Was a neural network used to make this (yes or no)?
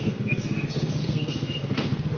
yes